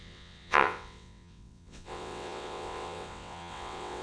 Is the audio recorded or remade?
remade